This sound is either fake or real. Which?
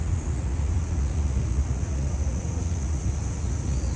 fake